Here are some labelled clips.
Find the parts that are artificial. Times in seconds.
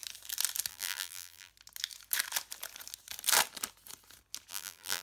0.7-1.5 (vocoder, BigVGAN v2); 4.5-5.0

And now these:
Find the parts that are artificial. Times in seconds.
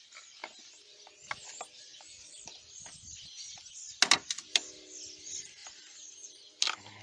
none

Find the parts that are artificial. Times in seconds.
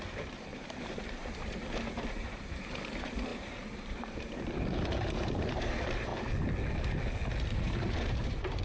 0.0-6.1 (vocoder, BigVGAN v2); 7.6-8.6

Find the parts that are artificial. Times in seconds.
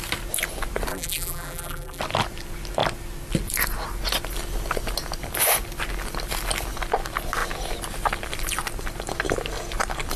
0.9-2.0 (vocoder, BigVGAN v2)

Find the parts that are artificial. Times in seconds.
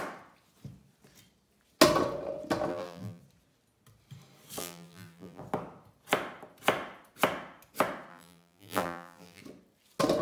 2.7-3.2 (vocoder, BigVGAN v2); 4.6-5.4; 8.1-9.4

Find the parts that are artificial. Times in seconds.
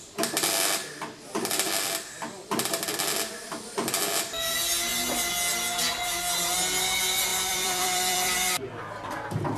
7.3-9.6 (vocoder, BigVGAN v2)